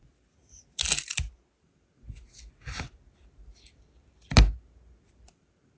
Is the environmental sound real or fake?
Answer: real